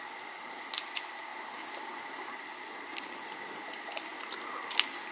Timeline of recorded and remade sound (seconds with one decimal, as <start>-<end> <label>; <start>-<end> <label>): 0.0-1.3 remade; 1.3-2.2 recorded; 2.2-4.1 remade; 4.1-5.1 recorded